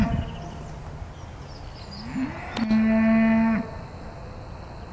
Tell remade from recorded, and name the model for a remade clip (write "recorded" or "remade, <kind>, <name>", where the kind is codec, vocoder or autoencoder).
recorded